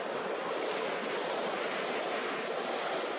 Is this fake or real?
real